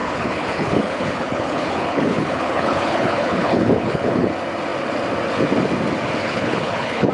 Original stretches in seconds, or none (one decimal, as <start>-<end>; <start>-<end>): 4.3-6.2